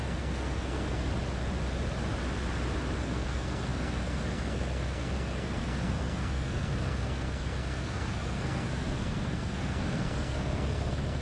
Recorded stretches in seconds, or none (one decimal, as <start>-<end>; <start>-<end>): 1.1-3.0